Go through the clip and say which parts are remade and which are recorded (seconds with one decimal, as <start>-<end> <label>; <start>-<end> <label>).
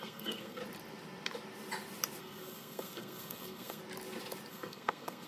0.0-0.6 remade; 0.6-2.2 recorded; 2.2-3.8 remade; 3.8-4.5 recorded; 4.5-5.3 remade